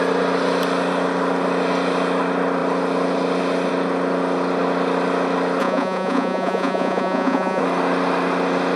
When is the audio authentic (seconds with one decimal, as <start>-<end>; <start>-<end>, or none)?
0.0-5.6; 7.6-8.8